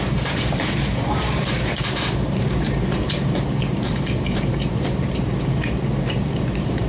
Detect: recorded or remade remade